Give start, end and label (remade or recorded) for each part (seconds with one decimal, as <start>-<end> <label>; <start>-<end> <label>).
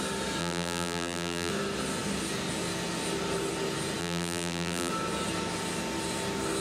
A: 0.0-0.4 recorded; 0.4-1.5 remade; 1.5-4.0 recorded; 4.0-4.9 remade; 4.9-6.6 recorded